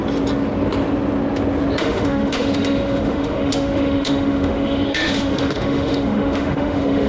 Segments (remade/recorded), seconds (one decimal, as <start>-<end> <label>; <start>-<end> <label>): 0.0-1.8 recorded; 1.8-7.1 remade